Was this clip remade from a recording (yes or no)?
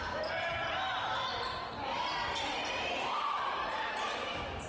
no